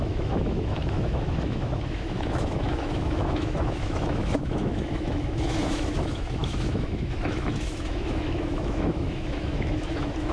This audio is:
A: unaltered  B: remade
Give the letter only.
B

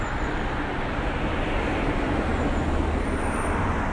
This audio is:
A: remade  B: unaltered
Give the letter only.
B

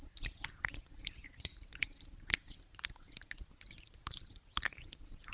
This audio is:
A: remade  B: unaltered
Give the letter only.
B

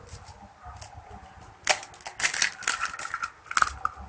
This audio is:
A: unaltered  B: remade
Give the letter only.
A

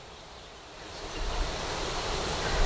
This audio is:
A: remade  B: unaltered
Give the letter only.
B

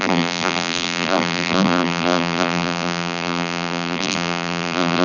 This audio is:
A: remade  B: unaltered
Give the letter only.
A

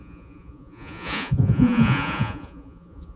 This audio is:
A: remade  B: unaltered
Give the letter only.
A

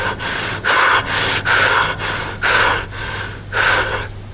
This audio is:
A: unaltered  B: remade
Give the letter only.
A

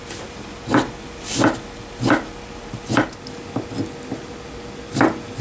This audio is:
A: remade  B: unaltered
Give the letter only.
B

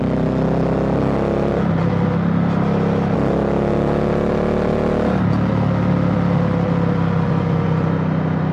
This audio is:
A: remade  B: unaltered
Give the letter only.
B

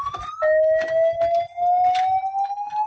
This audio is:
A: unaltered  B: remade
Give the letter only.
A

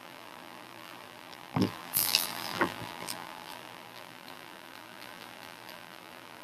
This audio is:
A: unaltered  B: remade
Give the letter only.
B